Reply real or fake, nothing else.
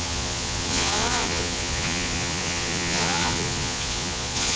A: fake